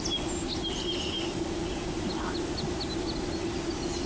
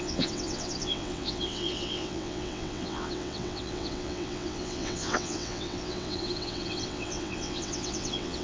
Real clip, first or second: first